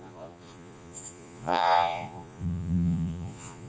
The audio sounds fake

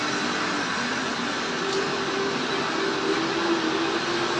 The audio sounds real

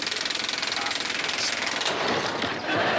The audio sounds real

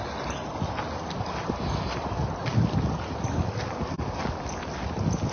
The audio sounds real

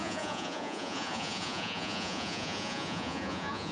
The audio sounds fake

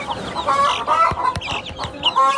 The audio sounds real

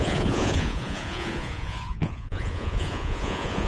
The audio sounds fake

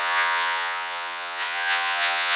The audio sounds fake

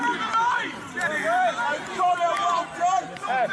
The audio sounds real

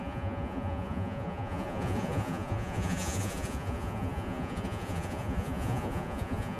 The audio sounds fake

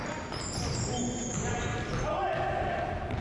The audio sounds real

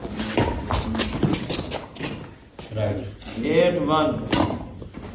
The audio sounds real